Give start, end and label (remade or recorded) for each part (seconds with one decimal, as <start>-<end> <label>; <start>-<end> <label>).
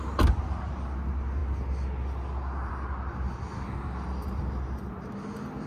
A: 0.0-5.7 recorded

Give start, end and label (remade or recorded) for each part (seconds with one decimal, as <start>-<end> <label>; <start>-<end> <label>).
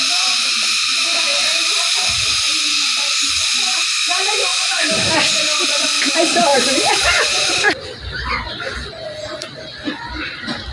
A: 0.0-0.9 recorded; 0.9-2.2 remade; 2.2-4.5 recorded; 4.5-5.1 remade; 5.1-6.5 recorded; 6.5-8.5 remade; 8.5-10.7 recorded